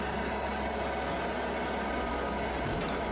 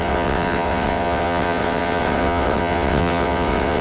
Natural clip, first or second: first